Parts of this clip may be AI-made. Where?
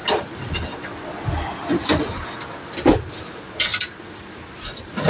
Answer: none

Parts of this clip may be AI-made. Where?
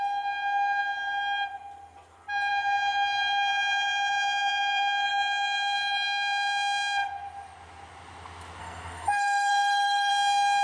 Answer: 8.6-10.1 (codec, SNAC)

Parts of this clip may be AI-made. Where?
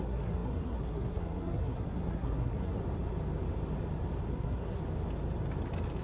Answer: 0.0-2.8 (codec, SNAC); 4.3-4.8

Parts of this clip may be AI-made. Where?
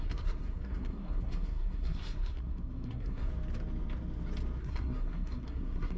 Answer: 0.0-3.3 (codec, SNAC); 4.6-6.0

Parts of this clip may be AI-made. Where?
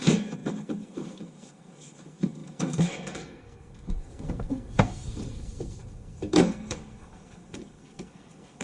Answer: 0.0-8.6 (codec, SNAC)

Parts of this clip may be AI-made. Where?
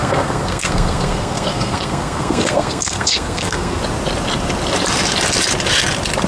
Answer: 0.0-3.8 (codec, SNAC)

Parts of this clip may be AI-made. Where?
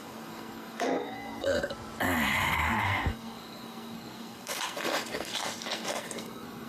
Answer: 0.0-1.7 (codec, SNAC); 2.5-6.7